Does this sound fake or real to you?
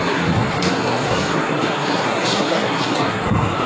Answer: fake